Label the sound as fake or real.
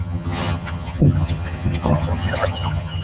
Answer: fake